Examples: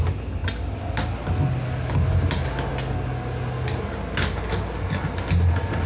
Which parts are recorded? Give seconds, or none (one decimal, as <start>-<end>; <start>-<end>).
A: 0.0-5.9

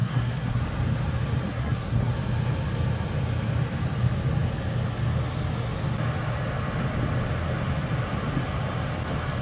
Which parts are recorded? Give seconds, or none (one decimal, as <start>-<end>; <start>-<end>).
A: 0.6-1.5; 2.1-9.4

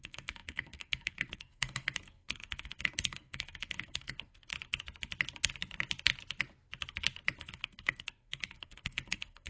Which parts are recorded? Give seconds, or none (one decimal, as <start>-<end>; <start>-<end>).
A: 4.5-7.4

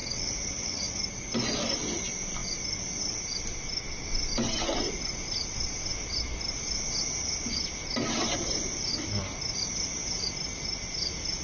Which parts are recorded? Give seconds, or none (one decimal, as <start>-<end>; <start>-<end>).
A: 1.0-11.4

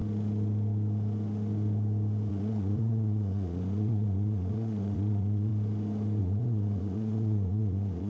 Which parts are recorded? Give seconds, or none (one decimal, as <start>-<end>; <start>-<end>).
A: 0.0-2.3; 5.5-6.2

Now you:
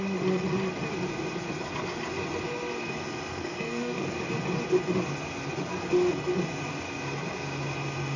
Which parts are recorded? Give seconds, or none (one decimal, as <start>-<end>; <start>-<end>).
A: 0.0-3.3; 4.1-8.2

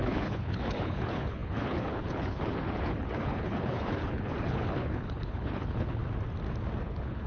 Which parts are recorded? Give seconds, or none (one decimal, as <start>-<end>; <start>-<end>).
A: 6.0-6.8